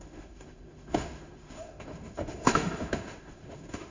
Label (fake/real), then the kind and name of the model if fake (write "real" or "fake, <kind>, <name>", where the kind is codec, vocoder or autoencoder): fake, autoencoder, DAC-VAE